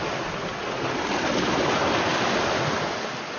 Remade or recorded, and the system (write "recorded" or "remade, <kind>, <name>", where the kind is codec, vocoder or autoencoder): recorded